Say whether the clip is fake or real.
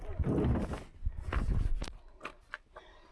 real